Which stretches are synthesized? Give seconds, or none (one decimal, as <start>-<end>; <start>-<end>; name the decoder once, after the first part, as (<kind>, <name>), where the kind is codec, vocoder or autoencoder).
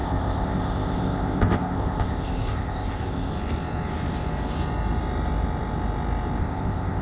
0.0-3.3 (codec, ZipCodec); 6.4-7.0